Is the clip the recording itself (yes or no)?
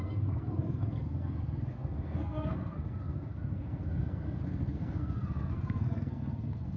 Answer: no